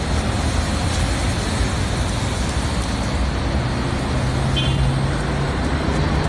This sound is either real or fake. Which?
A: real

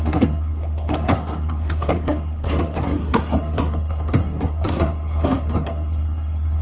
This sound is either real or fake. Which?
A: fake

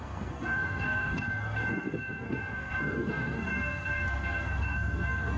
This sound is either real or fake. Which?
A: fake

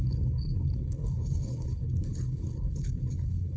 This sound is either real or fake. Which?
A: fake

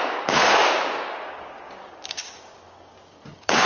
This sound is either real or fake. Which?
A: fake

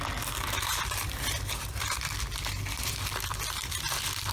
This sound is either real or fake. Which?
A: fake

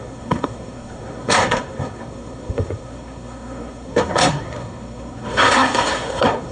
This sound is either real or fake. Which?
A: fake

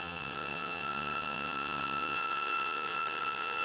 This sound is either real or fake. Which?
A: fake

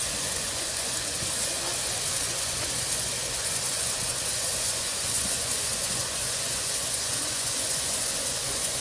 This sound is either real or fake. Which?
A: fake